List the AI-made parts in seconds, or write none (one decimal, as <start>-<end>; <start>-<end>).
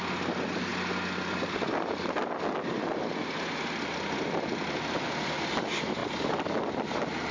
none